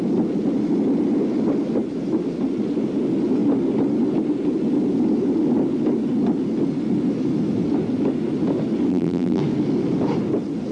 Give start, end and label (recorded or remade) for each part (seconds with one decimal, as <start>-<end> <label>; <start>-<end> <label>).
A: 0.0-8.9 recorded; 8.9-9.4 remade; 9.4-10.7 recorded